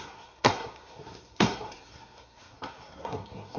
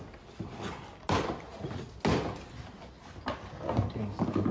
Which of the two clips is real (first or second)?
second